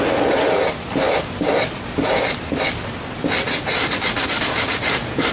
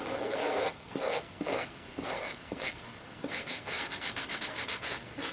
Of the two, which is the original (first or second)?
first